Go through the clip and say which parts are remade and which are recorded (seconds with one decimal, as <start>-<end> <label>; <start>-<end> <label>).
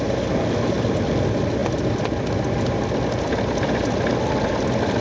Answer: 0.0-5.0 recorded